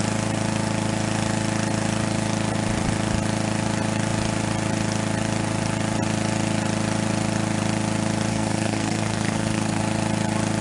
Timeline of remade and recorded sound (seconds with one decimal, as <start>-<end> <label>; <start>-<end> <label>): 0.0-8.3 recorded; 8.3-9.8 remade; 9.8-10.6 recorded